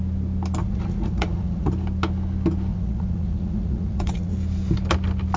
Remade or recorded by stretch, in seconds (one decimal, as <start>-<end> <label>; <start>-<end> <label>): 0.0-0.6 recorded; 0.6-1.7 remade; 1.7-2.7 recorded; 2.7-4.3 remade; 4.3-5.4 recorded